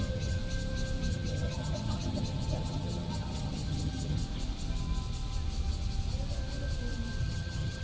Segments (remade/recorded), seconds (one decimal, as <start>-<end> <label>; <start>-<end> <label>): 0.0-0.4 remade; 0.4-1.1 recorded; 1.1-4.2 remade; 4.2-7.2 recorded; 7.2-7.8 remade